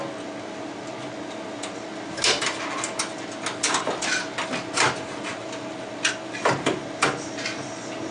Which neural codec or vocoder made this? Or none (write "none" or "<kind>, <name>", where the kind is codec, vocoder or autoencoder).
none